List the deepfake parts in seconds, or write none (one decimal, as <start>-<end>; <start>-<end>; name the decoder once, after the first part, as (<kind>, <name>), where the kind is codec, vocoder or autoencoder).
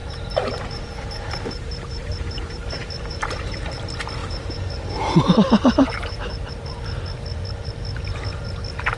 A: 0.0-3.8 (vocoder, BigVGAN v2); 4.2-6.5